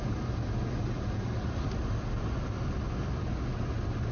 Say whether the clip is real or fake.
real